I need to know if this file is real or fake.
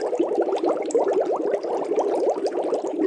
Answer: real